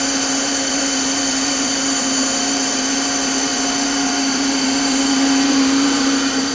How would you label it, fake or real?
fake